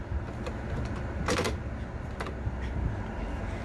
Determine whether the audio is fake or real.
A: real